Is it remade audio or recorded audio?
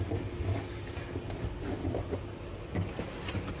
recorded